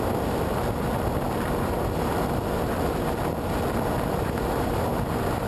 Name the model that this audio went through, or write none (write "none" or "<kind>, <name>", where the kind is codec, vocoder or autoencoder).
none